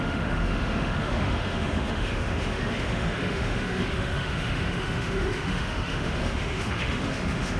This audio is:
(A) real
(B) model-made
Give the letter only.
B